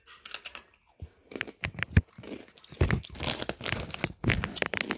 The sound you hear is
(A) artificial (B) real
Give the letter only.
B